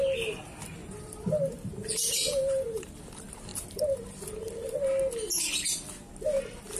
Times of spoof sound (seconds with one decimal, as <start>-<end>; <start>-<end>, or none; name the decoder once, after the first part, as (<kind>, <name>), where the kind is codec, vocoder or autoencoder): 0.8-3.0 (vocoder, BigVGAN v2); 3.5-4.3